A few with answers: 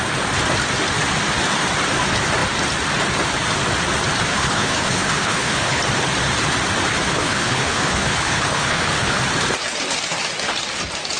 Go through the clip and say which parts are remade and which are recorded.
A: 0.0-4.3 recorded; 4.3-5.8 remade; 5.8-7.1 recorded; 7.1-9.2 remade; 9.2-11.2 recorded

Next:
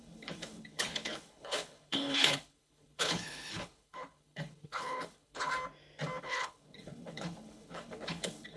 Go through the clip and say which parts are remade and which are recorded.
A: 0.0-5.5 remade; 5.5-6.2 recorded; 6.2-8.6 remade

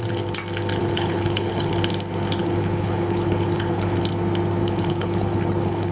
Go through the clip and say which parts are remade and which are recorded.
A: 0.0-0.8 recorded; 0.8-1.7 remade; 1.7-2.4 recorded; 2.4-4.0 remade; 4.0-4.6 recorded; 4.6-5.9 remade